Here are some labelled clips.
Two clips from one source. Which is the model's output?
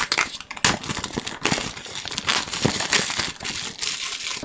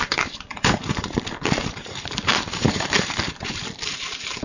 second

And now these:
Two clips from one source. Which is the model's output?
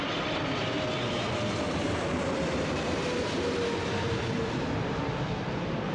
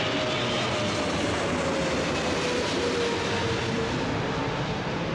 first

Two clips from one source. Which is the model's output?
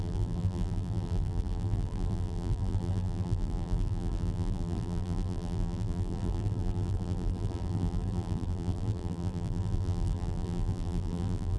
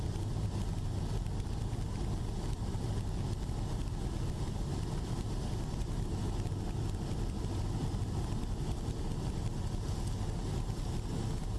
first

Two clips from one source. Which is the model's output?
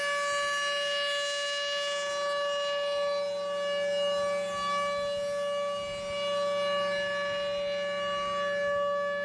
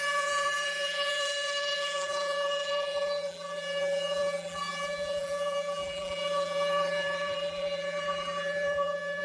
second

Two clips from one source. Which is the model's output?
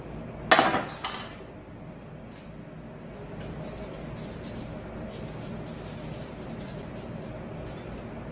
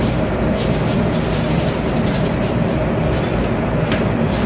second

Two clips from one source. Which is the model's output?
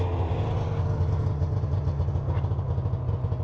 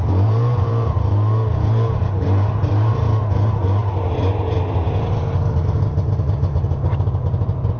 second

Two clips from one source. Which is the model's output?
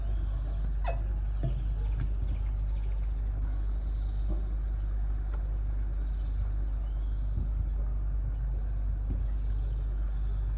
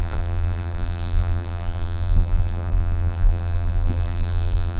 second